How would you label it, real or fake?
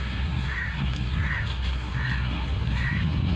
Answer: fake